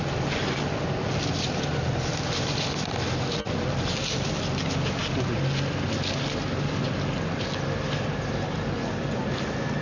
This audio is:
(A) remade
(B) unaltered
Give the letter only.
B